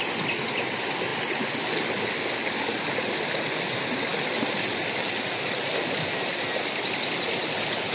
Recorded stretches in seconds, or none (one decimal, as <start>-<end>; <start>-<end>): 0.0-4.1; 6.3-7.9